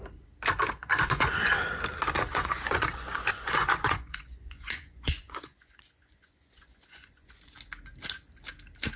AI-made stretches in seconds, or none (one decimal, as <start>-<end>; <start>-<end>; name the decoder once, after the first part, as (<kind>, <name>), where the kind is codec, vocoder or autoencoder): 0.8-1.5 (vocoder, Vocos); 2.3-7.5